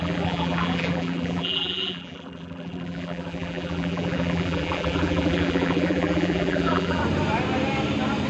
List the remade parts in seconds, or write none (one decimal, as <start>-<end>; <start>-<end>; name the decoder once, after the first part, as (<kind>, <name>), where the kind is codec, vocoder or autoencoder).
0.0-7.0 (vocoder, BigVGAN v2)